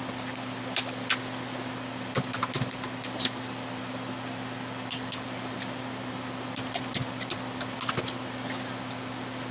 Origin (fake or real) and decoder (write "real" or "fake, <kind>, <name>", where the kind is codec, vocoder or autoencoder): real